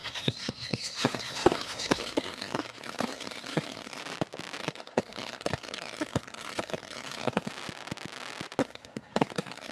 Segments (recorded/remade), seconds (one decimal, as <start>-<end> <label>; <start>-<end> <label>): 0.0-4.0 remade; 4.0-4.6 recorded; 4.6-7.5 remade; 7.5-8.6 recorded; 8.6-9.7 remade